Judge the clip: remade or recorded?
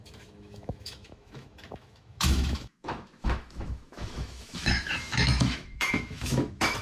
remade